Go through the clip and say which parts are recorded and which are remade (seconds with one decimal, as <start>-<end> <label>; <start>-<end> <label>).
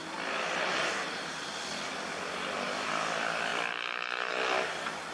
0.0-1.9 recorded; 1.9-2.9 remade; 2.9-3.5 recorded; 3.5-4.3 remade; 4.3-5.1 recorded